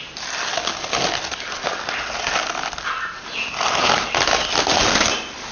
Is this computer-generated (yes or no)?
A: no